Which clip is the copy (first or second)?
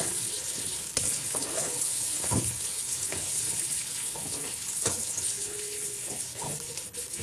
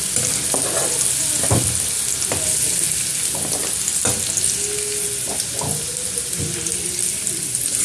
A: first